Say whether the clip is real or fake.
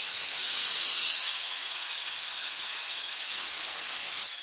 fake